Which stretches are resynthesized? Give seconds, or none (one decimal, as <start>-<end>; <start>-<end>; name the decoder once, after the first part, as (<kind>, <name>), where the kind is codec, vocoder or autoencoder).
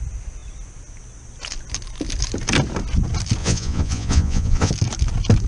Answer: 3.4-4.7 (vocoder, Vocos)